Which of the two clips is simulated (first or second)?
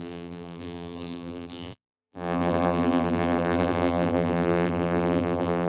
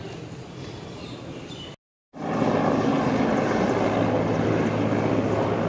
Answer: first